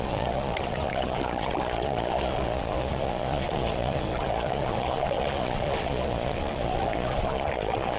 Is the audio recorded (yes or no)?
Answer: no